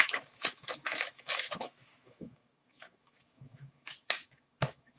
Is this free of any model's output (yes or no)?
no